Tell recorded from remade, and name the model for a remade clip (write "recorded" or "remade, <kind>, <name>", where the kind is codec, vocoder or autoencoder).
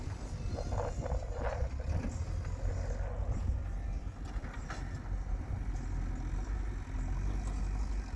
recorded